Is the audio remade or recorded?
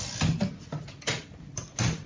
recorded